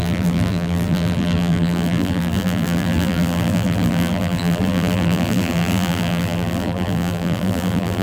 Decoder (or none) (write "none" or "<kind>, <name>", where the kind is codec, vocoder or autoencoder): vocoder, BigVGAN v2